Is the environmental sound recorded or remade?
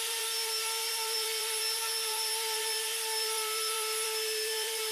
remade